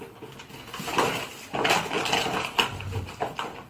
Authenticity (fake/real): real